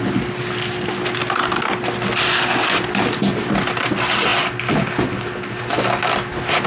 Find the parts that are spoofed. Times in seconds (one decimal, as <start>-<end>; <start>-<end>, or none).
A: none